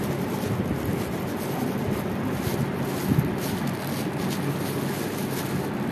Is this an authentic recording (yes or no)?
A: yes